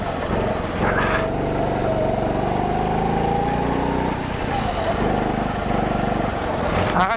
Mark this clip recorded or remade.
recorded